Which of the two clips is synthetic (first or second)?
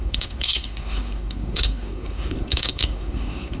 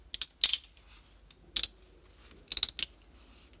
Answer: first